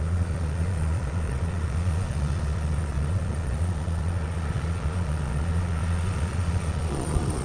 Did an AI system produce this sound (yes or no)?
yes